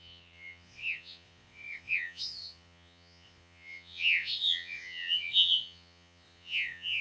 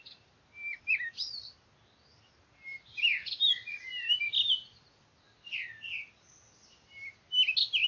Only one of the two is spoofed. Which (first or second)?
first